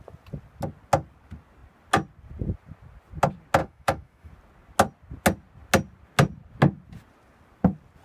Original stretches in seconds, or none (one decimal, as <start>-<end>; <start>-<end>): 0.0-3.6; 4.3-8.0